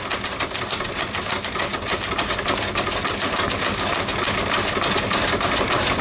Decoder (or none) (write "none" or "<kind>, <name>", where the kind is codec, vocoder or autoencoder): none